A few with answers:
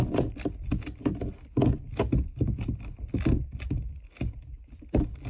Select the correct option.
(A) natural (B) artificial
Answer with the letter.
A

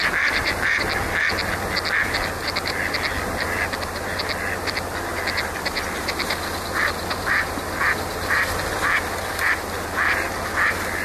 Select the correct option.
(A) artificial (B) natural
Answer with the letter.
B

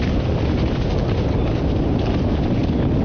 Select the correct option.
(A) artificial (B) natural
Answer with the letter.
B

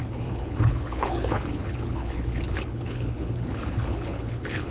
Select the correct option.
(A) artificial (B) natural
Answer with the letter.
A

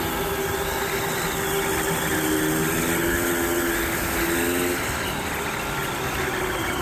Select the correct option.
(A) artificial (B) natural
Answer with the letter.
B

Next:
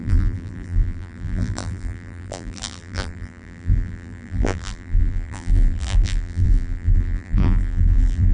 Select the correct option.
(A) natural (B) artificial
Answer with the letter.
B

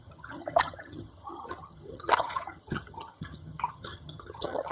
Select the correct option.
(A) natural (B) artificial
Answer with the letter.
B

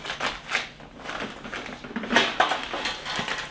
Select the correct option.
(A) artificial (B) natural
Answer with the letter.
B